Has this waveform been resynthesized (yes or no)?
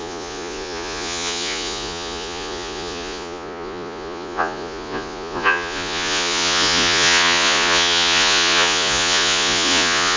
yes